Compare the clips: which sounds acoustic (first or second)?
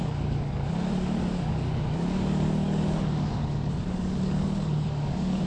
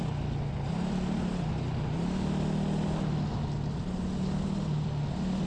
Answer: second